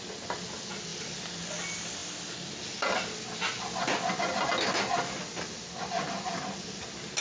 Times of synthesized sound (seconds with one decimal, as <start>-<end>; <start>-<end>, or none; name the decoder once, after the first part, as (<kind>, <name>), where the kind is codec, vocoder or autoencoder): none